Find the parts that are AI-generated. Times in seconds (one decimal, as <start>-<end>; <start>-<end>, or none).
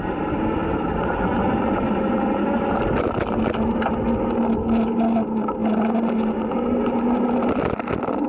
none